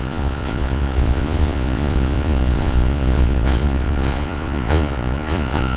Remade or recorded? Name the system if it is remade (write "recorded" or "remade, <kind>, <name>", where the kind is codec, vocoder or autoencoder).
remade, vocoder, Vocos